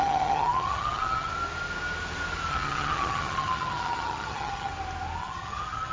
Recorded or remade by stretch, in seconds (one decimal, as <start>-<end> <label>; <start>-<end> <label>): 0.0-1.3 remade; 1.3-2.5 recorded; 2.5-4.7 remade; 4.7-5.2 recorded; 5.2-5.9 remade